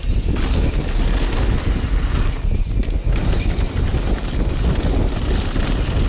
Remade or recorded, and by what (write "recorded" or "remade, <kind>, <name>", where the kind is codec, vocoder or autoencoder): recorded